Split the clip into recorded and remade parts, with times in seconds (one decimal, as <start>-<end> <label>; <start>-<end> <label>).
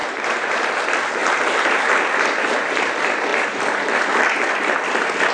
0.0-0.7 remade; 0.7-1.2 recorded; 1.2-1.9 remade; 1.9-5.3 recorded